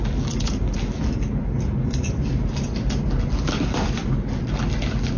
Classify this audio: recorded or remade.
recorded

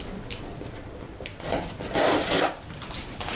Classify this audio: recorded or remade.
remade